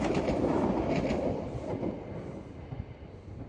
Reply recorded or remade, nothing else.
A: recorded